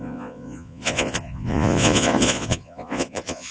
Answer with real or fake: fake